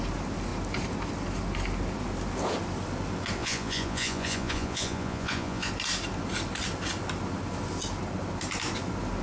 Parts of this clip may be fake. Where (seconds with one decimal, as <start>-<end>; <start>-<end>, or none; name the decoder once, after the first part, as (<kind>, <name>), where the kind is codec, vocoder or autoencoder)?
3.4-5.7 (vocoder, Vocos)